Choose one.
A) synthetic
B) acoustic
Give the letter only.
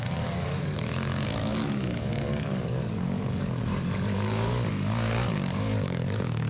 A